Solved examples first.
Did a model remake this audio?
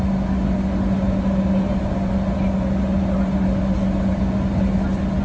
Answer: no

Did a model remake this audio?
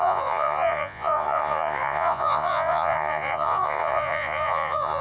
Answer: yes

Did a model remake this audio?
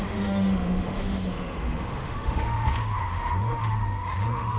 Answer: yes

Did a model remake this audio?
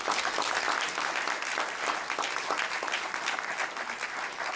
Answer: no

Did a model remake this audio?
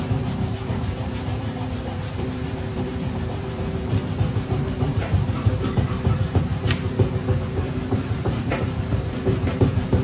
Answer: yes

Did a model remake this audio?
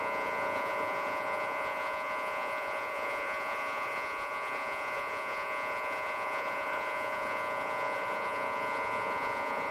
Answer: yes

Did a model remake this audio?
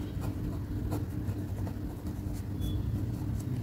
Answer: no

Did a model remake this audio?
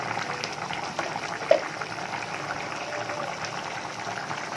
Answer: yes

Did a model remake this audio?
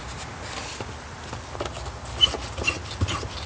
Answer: no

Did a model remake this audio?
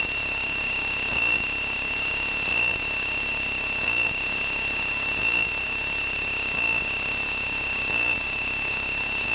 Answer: no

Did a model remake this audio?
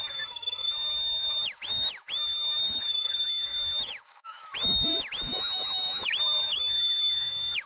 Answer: yes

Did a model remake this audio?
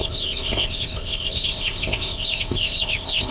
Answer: yes